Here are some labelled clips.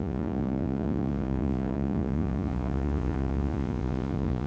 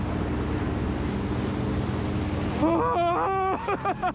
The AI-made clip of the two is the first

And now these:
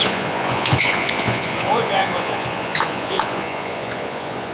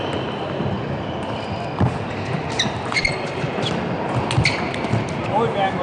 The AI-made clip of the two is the first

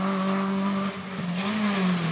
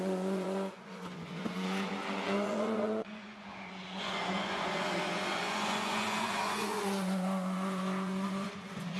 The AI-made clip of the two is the second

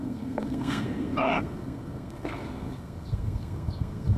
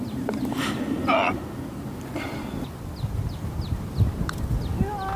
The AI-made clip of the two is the first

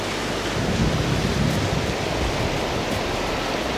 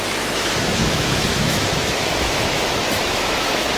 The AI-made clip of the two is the second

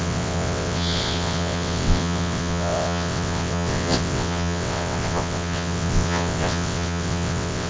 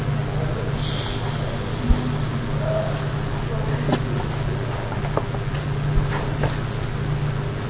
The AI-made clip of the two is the first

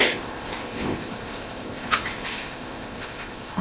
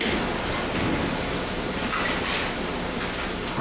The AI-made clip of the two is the first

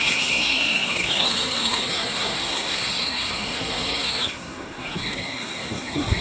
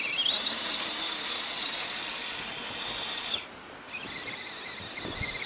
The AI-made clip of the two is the first